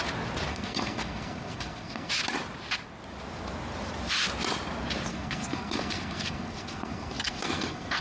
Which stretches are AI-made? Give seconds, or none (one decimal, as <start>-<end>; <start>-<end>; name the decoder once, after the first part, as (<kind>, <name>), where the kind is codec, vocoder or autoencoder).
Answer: 0.5-2.1 (codec, SNAC); 5.1-8.0